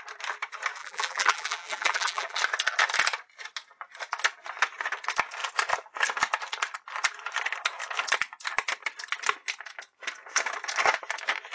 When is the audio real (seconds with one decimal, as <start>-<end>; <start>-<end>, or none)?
0.0-0.8; 2.4-11.5